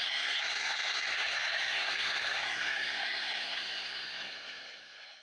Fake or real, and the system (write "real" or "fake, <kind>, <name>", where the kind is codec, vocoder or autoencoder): fake, codec, SNAC